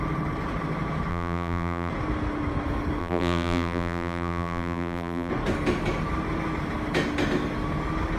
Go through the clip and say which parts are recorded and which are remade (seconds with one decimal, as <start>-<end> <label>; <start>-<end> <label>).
0.0-1.1 recorded; 1.1-1.9 remade; 1.9-3.0 recorded; 3.0-5.3 remade; 5.3-8.2 recorded